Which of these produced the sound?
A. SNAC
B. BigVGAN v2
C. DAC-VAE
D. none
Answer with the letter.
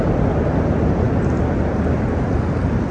D